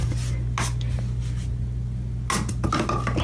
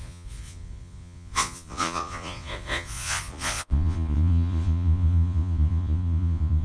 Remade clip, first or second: second